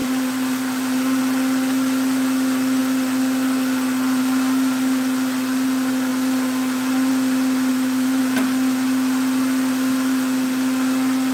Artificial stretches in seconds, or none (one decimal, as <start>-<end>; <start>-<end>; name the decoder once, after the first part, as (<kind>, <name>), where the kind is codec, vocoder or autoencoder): 0.0-1.2 (vocoder, BigVGAN v2); 7.7-8.2